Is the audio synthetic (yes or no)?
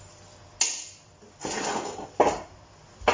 no